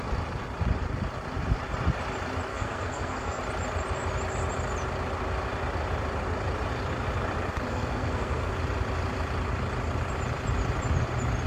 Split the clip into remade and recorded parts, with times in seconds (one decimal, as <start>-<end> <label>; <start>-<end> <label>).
0.0-2.5 recorded; 2.5-3.4 remade; 3.4-7.7 recorded; 7.7-8.5 remade; 8.5-11.5 recorded